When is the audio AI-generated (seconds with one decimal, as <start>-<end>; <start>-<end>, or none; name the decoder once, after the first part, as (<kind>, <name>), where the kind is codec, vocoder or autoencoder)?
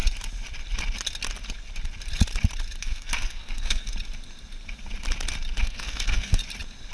2.8-3.9 (codec, SNAC); 5.6-6.4